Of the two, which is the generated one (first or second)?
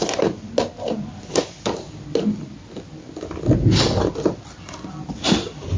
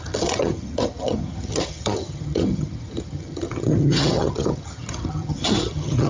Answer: second